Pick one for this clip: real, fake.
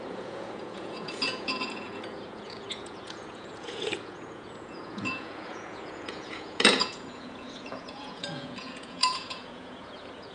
fake